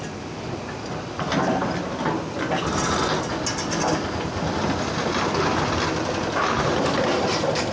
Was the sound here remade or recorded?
recorded